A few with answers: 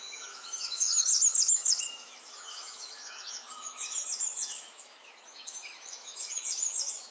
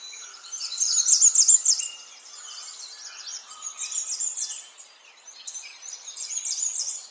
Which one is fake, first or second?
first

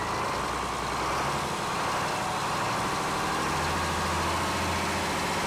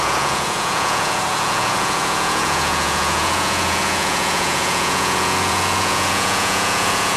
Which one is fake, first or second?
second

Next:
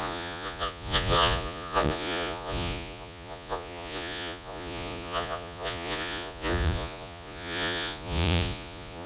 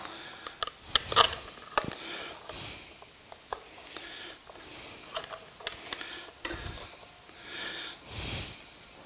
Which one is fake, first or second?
first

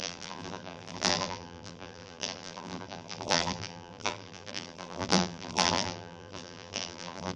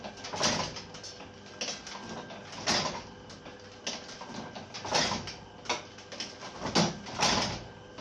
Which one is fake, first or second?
first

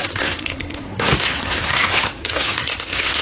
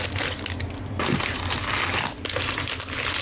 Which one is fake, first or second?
first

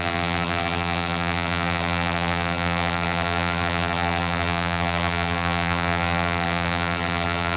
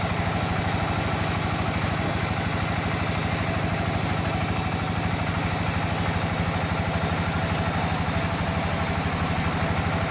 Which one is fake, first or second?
first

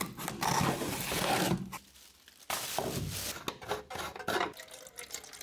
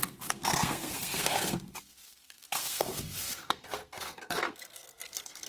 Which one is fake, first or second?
second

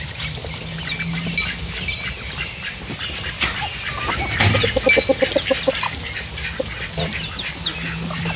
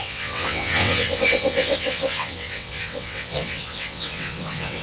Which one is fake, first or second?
second